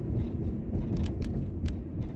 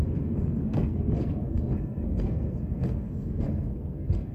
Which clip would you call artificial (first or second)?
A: second